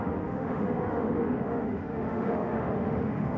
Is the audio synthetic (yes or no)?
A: yes